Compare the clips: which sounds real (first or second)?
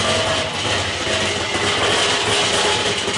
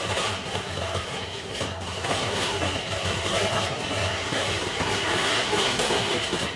first